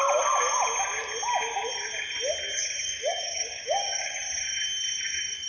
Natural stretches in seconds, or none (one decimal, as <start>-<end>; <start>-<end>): 0.0-2.8; 4.2-5.5